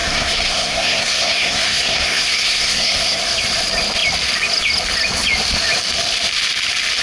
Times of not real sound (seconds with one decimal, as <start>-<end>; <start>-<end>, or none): 0.0-3.2